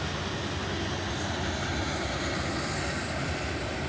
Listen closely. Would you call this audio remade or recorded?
recorded